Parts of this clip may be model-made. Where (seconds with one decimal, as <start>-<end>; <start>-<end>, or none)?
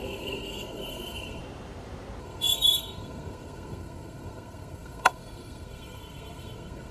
0.0-1.4; 2.2-6.9